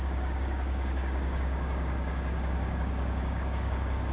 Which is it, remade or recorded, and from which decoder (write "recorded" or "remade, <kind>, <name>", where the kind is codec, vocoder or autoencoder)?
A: remade, codec, DAC